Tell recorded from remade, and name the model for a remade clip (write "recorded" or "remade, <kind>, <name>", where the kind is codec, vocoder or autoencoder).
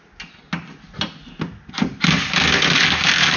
recorded